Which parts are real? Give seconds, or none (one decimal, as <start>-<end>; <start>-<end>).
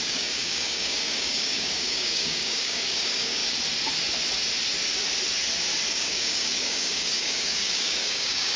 3.4-5.9